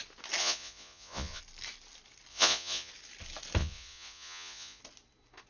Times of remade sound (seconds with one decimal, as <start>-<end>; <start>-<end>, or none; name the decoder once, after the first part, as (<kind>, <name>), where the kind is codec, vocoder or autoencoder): 0.4-1.4 (vocoder, Vocos); 2.3-2.9; 3.6-4.8